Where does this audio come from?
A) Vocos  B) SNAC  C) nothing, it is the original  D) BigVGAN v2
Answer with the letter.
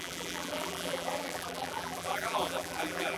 D